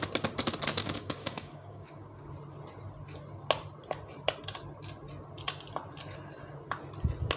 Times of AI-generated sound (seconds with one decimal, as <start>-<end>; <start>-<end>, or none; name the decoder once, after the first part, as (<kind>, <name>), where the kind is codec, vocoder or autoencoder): 0.8-2.3 (codec, DAC)